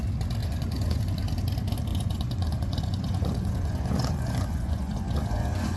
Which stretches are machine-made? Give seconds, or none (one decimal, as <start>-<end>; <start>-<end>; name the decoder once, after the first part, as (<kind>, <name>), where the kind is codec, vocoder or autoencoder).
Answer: 0.4-1.0 (vocoder, Vocos); 1.9-5.8